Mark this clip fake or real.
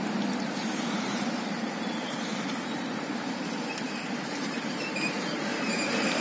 fake